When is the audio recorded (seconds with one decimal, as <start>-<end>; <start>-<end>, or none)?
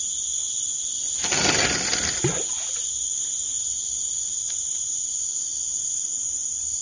0.4-4.5